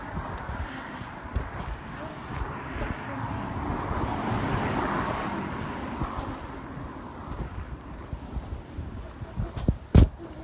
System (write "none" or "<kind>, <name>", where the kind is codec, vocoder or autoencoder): none